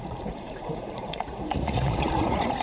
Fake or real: fake